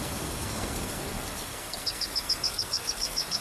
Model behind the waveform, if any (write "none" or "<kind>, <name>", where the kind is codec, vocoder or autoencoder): codec, SNAC